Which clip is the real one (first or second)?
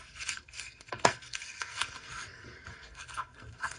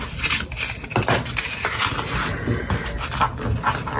second